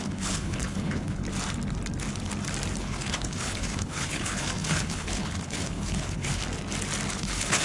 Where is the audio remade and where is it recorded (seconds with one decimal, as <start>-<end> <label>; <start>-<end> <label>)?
0.0-1.2 remade; 1.2-2.8 recorded; 2.8-6.4 remade; 6.4-7.1 recorded; 7.1-7.6 remade